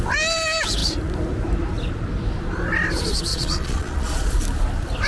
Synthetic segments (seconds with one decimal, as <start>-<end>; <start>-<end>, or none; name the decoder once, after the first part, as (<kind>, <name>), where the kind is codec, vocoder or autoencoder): 3.3-4.3 (vocoder, Vocos)